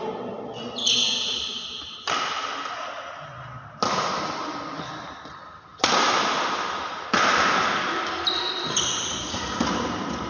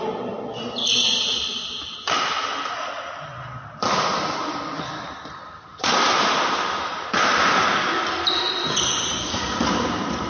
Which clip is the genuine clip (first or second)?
first